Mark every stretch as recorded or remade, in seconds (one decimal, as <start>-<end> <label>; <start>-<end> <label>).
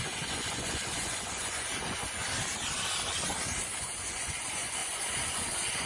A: 0.0-2.2 remade; 2.2-3.8 recorded; 3.8-5.9 remade